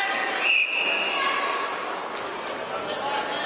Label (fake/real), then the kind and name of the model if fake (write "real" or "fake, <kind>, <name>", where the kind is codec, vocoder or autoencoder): real